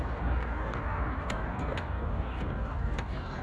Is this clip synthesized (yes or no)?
yes